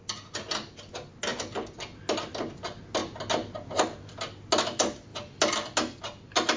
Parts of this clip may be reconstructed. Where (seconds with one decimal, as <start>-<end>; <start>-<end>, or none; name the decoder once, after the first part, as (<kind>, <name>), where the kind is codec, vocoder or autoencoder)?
none